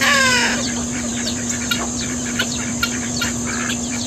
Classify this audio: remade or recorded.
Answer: remade